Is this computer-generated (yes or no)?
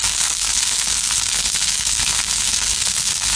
yes